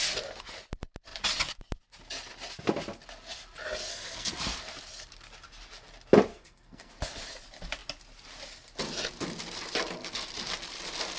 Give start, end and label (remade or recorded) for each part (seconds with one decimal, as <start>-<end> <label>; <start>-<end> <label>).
0.0-3.9 recorded; 3.9-4.4 remade; 4.4-6.3 recorded; 6.3-6.9 remade; 6.9-11.2 recorded